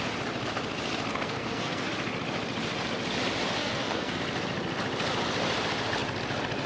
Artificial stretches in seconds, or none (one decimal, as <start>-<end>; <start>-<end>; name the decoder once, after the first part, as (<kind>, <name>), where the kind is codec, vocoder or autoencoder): 1.1-1.9 (codec, SNAC); 3.6-4.2